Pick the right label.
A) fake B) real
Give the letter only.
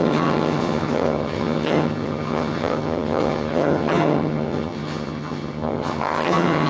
A